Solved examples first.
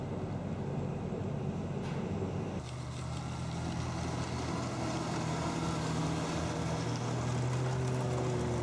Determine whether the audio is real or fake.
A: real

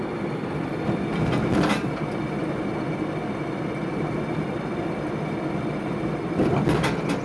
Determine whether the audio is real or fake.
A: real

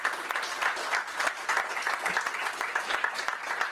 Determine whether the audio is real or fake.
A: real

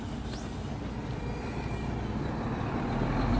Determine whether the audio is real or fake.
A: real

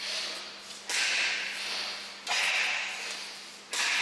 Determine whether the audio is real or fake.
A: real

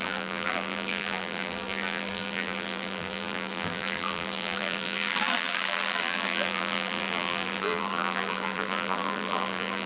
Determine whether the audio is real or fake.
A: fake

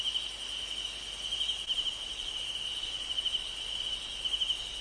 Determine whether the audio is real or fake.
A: real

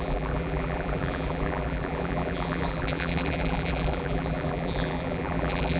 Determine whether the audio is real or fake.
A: fake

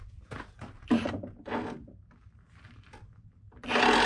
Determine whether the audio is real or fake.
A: real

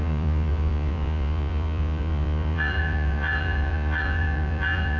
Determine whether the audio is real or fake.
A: fake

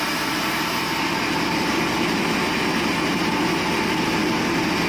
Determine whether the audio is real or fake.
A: real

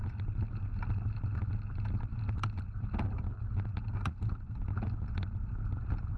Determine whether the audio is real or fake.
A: real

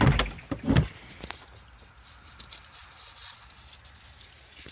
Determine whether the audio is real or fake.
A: real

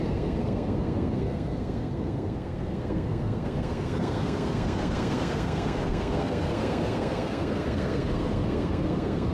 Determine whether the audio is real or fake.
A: fake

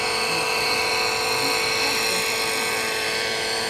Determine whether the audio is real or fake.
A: fake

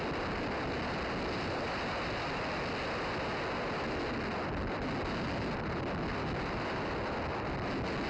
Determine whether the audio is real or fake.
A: real